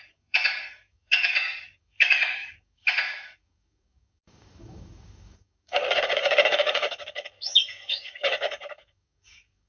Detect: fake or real fake